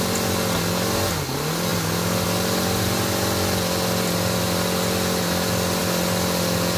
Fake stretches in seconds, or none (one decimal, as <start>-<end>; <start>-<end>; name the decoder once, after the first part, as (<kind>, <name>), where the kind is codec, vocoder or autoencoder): none